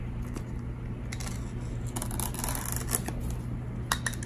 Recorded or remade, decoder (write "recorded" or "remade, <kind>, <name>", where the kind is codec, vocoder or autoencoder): recorded